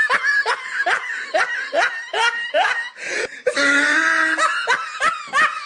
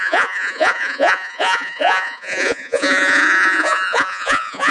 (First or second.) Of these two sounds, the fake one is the second